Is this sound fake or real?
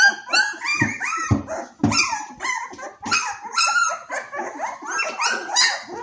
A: real